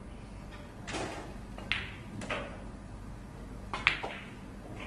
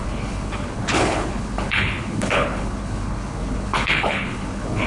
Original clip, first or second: first